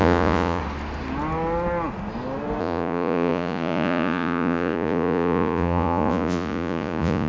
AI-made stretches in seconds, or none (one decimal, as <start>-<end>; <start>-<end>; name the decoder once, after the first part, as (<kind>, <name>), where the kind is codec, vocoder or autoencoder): 0.0-0.6 (vocoder, Vocos); 2.6-7.3